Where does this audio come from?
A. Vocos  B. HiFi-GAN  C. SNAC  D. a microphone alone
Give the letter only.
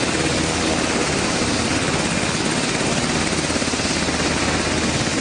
D